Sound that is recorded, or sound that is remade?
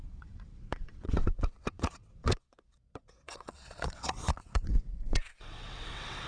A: remade